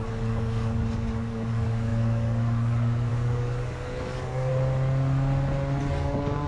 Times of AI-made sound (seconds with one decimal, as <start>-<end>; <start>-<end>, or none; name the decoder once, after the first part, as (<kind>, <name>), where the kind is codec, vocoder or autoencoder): 0.0-4.5 (codec, DAC); 5.8-6.5